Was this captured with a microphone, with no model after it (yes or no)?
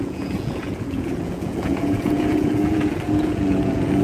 no